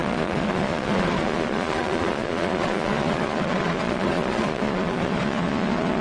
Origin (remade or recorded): remade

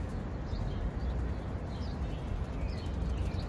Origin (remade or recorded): recorded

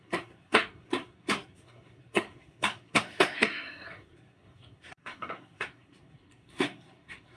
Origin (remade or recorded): remade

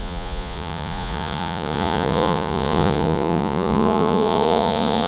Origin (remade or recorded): remade